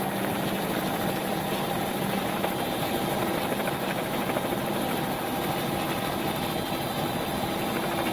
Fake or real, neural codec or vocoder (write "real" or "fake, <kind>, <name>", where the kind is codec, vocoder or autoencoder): fake, vocoder, BigVGAN v2